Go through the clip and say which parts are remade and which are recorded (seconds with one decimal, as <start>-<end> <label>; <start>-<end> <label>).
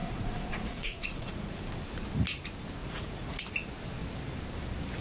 0.0-1.7 remade; 1.7-2.8 recorded; 2.8-3.4 remade; 3.4-5.0 recorded